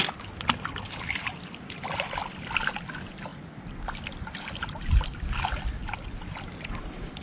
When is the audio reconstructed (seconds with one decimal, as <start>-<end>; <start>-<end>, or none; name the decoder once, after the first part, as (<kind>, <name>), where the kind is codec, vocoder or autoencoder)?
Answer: none